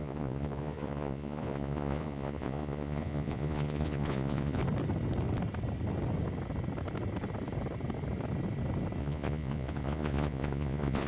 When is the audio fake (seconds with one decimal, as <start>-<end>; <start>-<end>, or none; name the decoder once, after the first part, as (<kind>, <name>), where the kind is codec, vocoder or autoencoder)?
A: 0.0-4.6 (vocoder, Vocos); 9.0-11.1